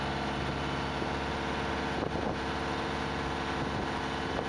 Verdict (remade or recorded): recorded